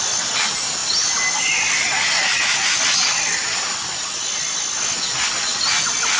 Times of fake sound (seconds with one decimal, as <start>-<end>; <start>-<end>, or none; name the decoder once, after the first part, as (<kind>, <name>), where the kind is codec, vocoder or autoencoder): none